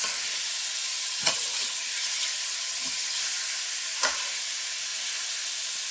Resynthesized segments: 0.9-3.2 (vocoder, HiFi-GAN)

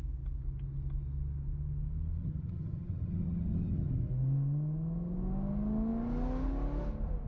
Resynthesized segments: 2.2-4.1 (vocoder, HiFi-GAN)

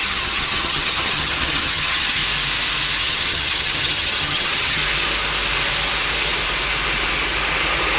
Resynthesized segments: 0.0-2.2 (vocoder, HiFi-GAN); 3.0-4.8

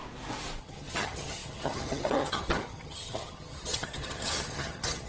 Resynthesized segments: 0.6-5.1 (vocoder, HiFi-GAN)

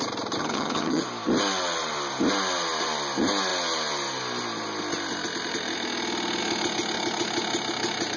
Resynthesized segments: 0.4-1.0 (vocoder, HiFi-GAN)